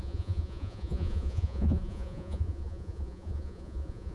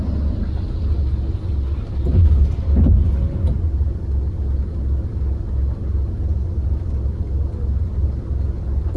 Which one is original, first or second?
second